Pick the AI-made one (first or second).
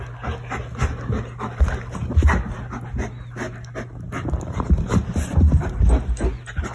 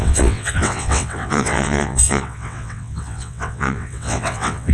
second